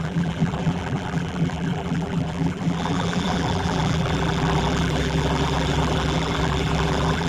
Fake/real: fake